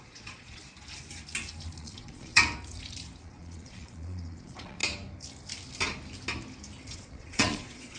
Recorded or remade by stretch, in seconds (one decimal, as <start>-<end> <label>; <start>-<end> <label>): 0.0-0.6 remade; 0.6-1.8 recorded; 1.8-2.4 remade; 2.4-3.2 recorded; 3.2-4.8 remade; 4.8-6.9 recorded; 6.9-8.0 remade